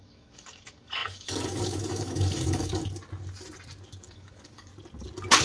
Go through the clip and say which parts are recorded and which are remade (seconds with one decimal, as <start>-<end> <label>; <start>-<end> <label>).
0.0-2.8 remade; 2.8-4.0 recorded; 4.0-4.7 remade; 4.7-5.4 recorded

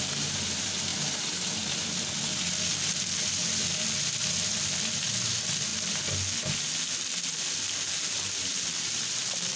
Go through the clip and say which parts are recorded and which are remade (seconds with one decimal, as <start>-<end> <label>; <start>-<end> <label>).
0.0-5.7 remade; 5.7-8.1 recorded; 8.1-9.6 remade

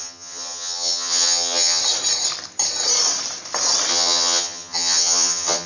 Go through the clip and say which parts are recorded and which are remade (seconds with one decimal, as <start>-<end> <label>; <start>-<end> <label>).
0.0-1.8 remade; 1.8-3.9 recorded; 3.9-5.7 remade

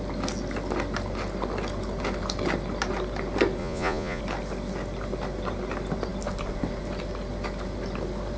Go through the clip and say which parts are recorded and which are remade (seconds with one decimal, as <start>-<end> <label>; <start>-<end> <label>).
0.0-3.6 recorded; 3.6-4.2 remade; 4.2-8.4 recorded